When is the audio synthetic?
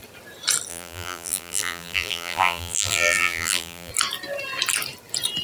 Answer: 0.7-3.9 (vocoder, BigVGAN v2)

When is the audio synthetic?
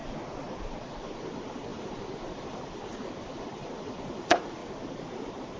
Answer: 0.6-4.6 (vocoder, BigVGAN v2)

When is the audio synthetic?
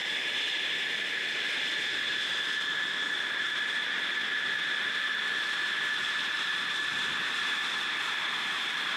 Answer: 0.6-4.2 (vocoder, BigVGAN v2); 6.1-6.9; 8.1-9.0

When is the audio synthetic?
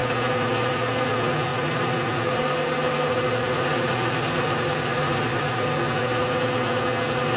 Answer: 1.5-5.9 (vocoder, BigVGAN v2)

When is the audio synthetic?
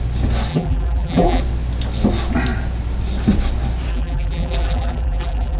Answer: 0.5-1.4 (vocoder, BigVGAN v2); 3.9-5.6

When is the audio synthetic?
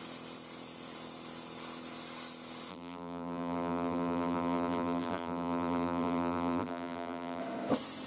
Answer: 2.7-7.4 (vocoder, BigVGAN v2)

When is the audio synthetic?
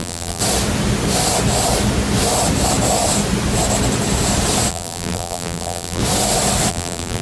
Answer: 0.0-0.4 (vocoder, BigVGAN v2); 4.7-6.0; 6.7-7.2